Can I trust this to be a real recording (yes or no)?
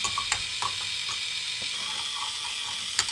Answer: yes